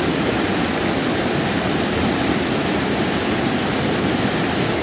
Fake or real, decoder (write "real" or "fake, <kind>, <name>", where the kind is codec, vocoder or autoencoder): real